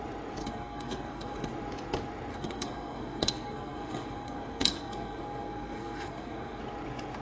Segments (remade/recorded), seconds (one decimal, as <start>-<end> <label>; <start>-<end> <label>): 0.0-0.4 recorded; 0.4-1.5 remade; 1.5-2.3 recorded; 2.3-6.6 remade; 6.6-7.2 recorded